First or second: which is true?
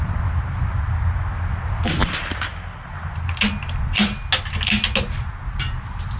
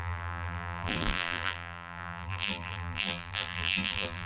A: first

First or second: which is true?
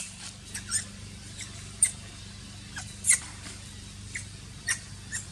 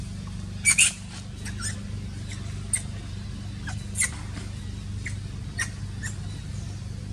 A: second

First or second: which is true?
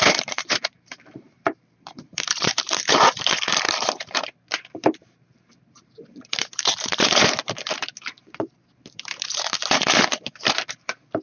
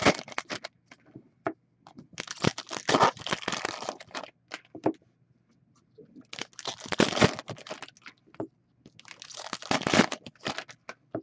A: second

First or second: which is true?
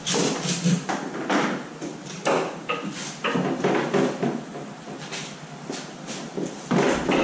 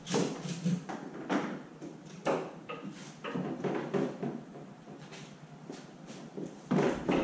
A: first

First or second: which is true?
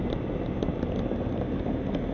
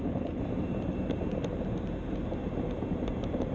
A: first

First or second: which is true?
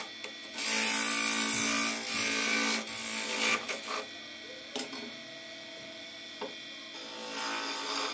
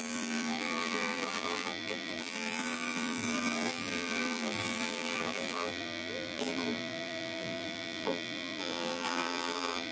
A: first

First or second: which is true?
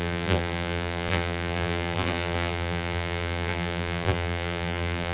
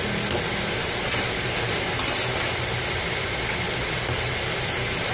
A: second